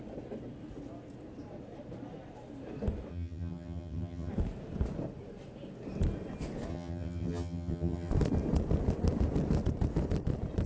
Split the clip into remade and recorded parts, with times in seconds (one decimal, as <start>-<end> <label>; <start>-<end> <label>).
0.0-3.1 recorded; 3.1-4.3 remade; 4.3-6.7 recorded; 6.7-8.1 remade; 8.1-10.7 recorded